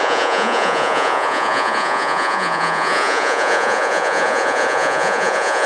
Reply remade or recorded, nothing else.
remade